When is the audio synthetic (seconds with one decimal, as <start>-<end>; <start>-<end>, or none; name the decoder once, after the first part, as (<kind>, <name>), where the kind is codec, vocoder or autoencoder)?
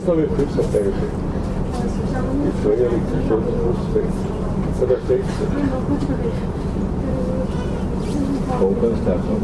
none